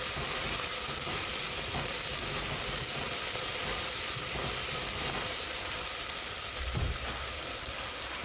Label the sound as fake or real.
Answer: real